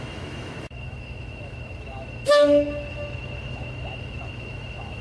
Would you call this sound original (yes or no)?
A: no